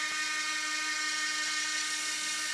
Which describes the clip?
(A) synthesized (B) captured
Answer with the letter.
B